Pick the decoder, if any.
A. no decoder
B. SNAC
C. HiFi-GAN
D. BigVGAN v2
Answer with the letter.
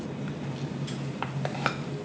A